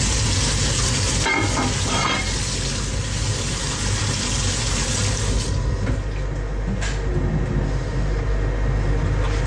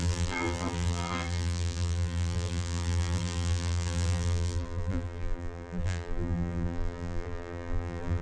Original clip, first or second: first